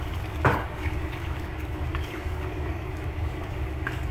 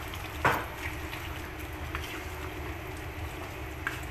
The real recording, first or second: second